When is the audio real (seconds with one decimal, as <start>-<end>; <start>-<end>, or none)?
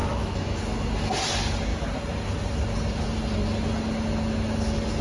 0.6-5.0